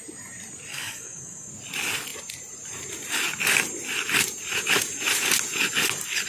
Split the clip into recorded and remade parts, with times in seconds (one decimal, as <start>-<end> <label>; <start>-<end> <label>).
0.0-0.7 recorded; 0.7-1.5 remade; 1.5-6.3 recorded